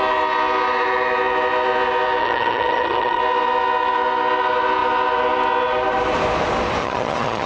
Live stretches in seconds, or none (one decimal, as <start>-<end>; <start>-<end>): 0.0-2.2; 3.2-6.8